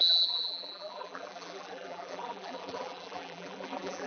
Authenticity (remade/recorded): remade